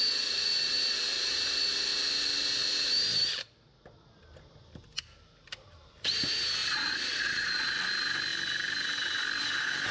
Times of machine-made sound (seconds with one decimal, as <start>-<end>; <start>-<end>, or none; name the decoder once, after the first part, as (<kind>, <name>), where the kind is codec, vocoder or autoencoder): 6.6-7.9 (vocoder, Vocos)